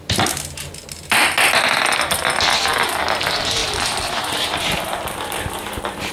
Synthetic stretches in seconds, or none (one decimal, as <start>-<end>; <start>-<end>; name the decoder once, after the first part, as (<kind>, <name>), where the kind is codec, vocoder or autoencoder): 3.6-6.1 (vocoder, BigVGAN v2)